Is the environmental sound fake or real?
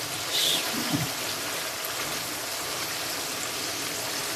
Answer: real